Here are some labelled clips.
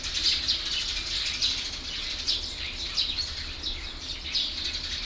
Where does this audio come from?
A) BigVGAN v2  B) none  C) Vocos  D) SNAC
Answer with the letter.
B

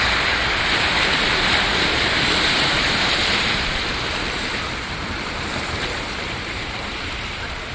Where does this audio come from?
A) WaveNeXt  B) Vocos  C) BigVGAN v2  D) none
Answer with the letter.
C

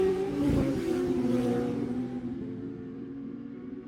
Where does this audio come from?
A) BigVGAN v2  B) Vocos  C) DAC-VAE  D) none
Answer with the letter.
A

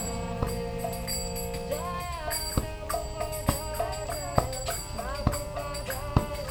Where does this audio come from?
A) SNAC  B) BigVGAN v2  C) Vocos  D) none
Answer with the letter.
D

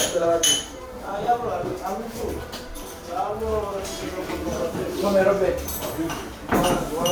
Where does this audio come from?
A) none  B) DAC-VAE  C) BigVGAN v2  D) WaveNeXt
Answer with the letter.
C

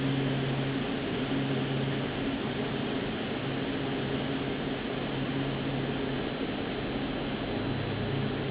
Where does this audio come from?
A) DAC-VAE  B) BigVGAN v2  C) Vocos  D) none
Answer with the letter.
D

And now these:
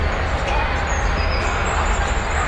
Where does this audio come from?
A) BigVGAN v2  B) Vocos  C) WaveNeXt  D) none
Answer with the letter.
D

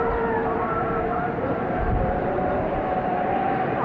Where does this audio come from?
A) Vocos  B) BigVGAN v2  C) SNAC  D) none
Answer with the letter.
B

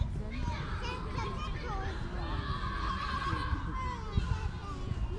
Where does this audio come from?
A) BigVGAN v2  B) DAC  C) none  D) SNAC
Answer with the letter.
C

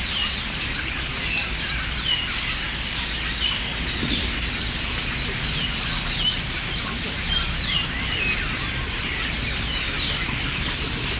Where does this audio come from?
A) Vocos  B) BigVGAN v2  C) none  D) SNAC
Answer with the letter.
C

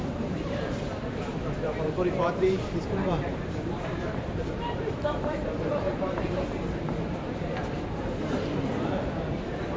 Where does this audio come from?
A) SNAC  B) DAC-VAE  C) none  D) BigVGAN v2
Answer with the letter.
D